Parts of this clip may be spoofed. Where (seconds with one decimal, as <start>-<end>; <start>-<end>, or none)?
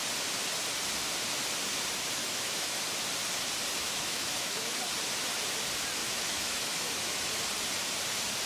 2.2-2.8; 3.8-4.8; 6.0-7.3